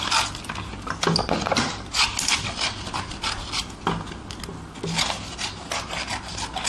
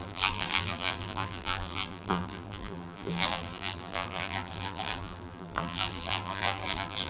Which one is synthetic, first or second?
second